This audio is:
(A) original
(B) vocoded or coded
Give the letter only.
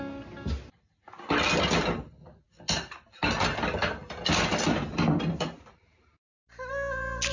A